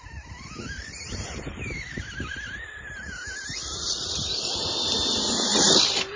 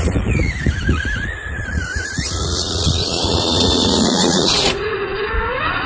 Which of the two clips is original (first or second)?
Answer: first